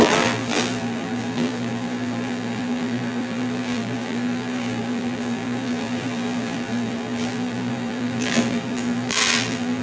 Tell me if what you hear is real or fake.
fake